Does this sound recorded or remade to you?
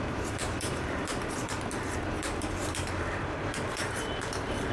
remade